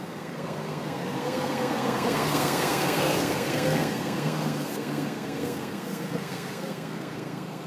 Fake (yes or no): yes